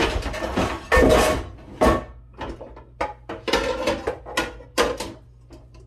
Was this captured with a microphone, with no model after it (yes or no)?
yes